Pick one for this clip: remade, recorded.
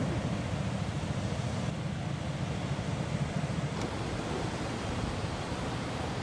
recorded